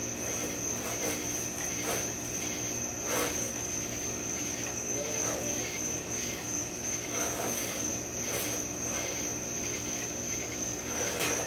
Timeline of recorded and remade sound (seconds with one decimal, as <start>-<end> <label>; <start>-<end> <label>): 0.0-3.3 recorded; 3.3-7.9 remade; 7.9-9.6 recorded; 9.6-11.5 remade